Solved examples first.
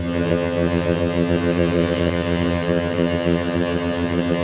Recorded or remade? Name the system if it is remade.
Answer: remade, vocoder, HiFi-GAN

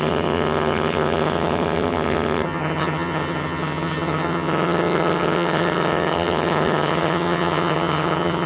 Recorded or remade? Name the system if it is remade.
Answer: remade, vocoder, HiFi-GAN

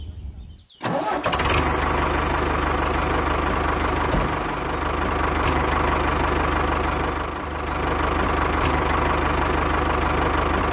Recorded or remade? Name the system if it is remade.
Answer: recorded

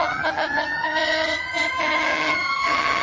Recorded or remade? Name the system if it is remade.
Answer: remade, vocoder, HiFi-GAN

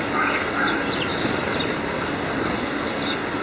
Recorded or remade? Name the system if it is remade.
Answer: recorded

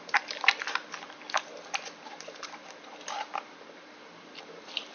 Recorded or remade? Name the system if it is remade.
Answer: recorded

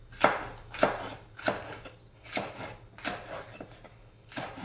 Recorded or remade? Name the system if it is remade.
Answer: recorded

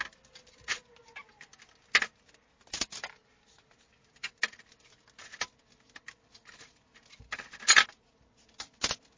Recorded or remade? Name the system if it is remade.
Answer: recorded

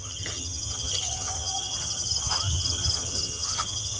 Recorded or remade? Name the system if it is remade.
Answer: remade, vocoder, HiFi-GAN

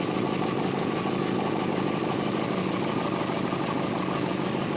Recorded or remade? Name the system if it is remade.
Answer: recorded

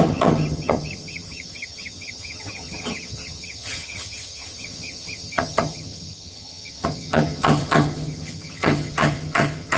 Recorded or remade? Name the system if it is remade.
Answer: remade, vocoder, HiFi-GAN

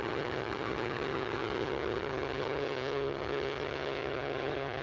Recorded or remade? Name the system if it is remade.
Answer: remade, vocoder, HiFi-GAN